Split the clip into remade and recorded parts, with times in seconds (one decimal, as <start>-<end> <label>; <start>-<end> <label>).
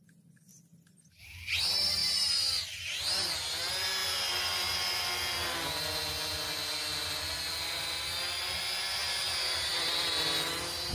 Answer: 0.0-10.9 recorded